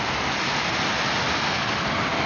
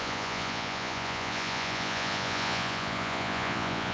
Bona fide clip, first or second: first